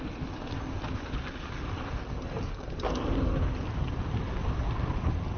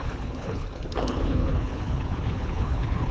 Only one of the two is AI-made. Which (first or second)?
second